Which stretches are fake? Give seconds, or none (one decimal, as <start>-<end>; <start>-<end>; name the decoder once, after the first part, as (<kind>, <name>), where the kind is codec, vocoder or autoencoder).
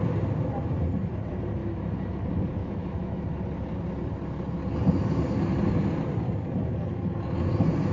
1.6-2.1 (autoencoder, DAC-VAE); 2.6-3.2